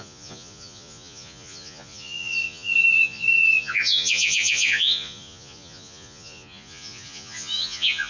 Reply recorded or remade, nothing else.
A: remade